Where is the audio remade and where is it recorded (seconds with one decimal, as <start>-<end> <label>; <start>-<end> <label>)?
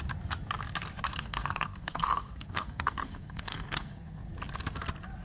0.0-1.1 recorded; 1.1-4.2 remade; 4.2-5.2 recorded